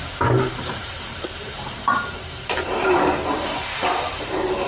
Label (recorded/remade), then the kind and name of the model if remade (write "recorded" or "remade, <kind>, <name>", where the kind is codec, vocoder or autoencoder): remade, vocoder, BigVGAN v2